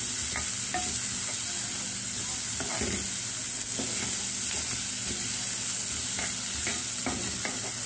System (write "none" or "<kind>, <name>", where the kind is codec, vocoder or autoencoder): none